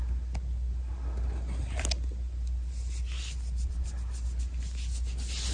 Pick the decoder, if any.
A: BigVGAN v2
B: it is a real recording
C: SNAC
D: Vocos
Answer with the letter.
B